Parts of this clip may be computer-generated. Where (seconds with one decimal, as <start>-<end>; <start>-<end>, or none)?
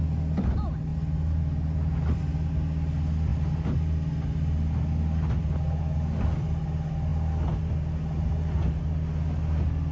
none